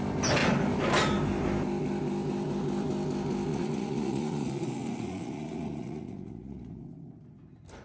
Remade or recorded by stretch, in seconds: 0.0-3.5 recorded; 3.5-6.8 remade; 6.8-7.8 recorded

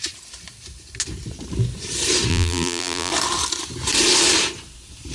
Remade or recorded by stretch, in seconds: 0.0-2.3 recorded; 2.3-3.1 remade; 3.1-5.1 recorded

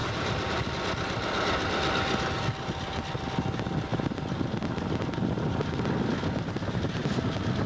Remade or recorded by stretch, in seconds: 0.0-0.7 remade; 0.7-7.7 recorded

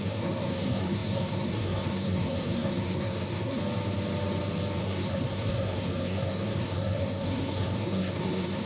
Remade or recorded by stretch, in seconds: 0.0-3.6 remade; 3.6-4.8 recorded; 4.8-8.7 remade